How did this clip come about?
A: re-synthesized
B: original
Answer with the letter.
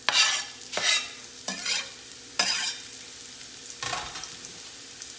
B